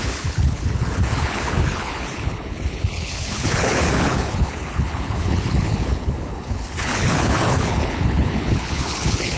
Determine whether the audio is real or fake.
fake